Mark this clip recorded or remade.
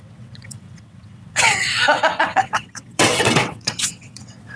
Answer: remade